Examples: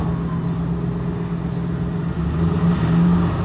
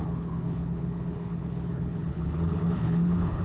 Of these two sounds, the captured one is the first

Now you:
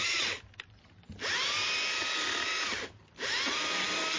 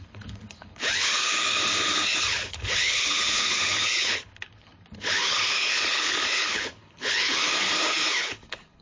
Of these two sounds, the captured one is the first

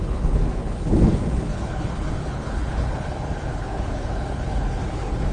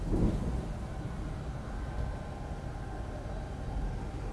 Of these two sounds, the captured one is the second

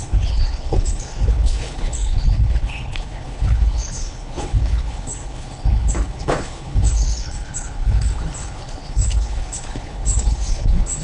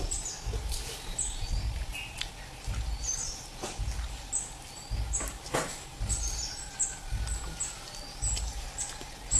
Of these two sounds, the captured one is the second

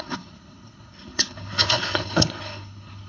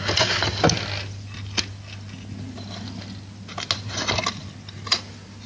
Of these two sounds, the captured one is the second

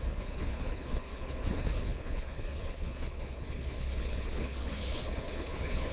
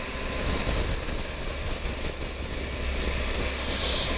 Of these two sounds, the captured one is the second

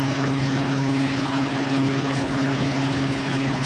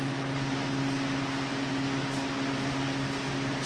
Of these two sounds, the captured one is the second